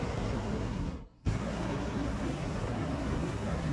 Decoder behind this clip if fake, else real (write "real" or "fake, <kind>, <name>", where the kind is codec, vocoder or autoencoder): fake, codec, SNAC